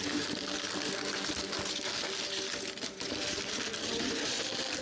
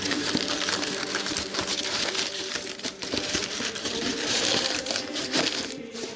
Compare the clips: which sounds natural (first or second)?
first